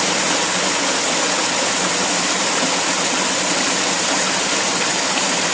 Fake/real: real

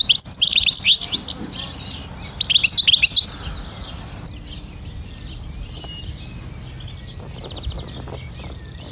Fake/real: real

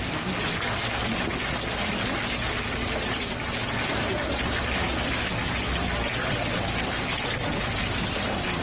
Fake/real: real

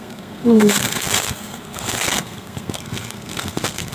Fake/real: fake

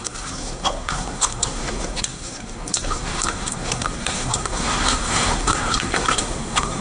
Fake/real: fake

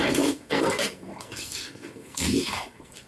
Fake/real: fake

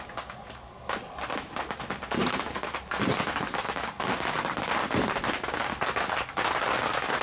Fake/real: real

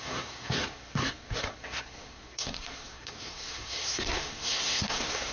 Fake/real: fake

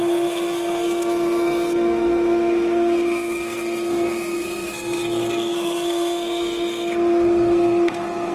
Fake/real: fake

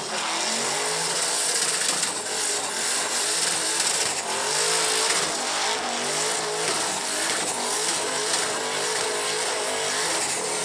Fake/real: real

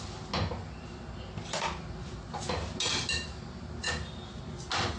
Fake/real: real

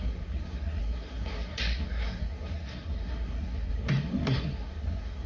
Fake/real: fake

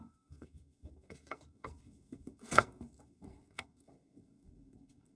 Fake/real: fake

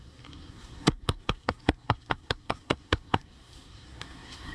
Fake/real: fake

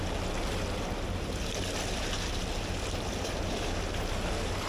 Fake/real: real